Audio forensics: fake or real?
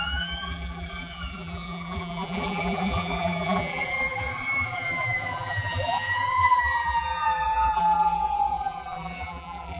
fake